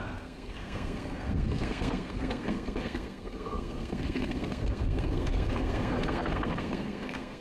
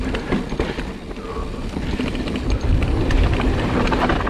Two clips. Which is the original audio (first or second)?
second